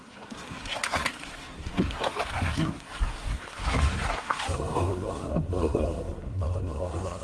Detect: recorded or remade remade